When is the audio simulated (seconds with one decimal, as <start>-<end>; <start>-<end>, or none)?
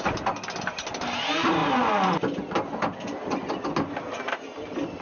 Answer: none